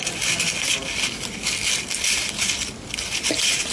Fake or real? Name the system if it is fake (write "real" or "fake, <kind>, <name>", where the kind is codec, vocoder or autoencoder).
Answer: real